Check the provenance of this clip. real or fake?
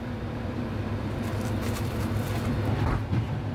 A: fake